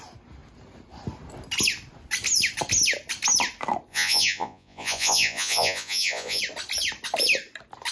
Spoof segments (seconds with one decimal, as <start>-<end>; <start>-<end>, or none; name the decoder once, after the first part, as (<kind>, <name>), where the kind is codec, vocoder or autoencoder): 3.9-6.4 (vocoder, Vocos)